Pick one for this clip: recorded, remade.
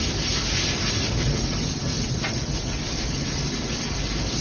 recorded